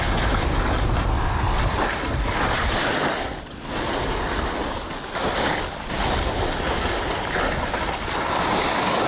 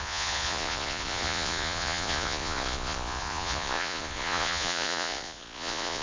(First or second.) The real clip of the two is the first